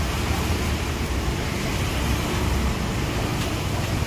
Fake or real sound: real